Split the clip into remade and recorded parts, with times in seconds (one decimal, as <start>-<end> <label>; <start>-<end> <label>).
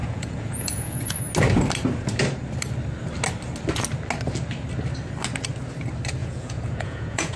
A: 0.0-1.2 remade; 1.2-6.2 recorded; 6.2-7.4 remade